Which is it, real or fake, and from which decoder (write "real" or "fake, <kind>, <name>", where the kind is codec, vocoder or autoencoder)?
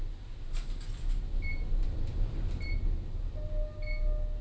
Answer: real